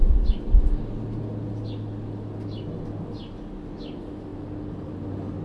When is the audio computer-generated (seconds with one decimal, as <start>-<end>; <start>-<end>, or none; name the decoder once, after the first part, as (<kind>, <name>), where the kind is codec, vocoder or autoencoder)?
none